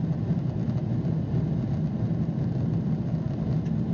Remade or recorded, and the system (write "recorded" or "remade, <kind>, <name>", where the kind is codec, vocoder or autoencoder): recorded